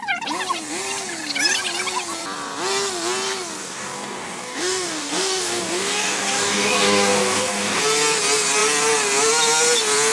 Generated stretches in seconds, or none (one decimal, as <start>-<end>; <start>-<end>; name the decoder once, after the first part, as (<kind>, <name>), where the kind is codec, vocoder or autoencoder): 3.6-7.8 (codec, DAC)